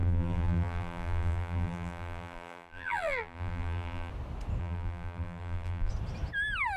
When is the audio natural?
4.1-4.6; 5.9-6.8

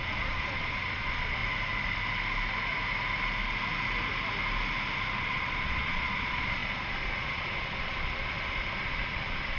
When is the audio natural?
1.4-5.2

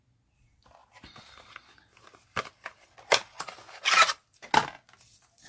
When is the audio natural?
0.0-5.5